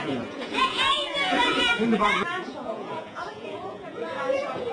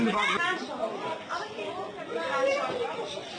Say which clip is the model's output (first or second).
first